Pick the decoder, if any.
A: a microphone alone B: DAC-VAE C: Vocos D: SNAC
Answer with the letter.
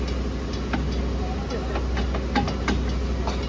A